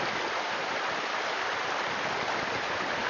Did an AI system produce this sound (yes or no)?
yes